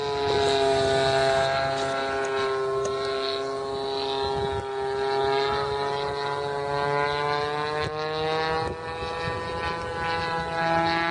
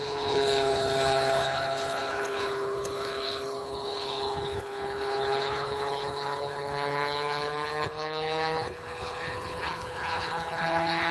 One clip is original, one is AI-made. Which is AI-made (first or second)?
second